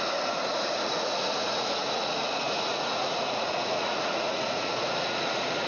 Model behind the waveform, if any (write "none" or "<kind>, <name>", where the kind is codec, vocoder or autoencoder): vocoder, Vocos